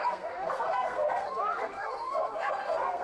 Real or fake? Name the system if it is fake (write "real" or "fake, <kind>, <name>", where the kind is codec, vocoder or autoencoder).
fake, codec, SNAC